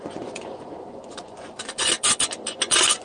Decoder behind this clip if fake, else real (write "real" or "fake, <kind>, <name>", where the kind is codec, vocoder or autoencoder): fake, vocoder, Vocos